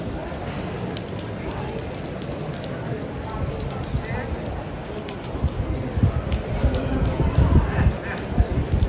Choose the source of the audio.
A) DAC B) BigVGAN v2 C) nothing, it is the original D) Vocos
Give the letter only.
C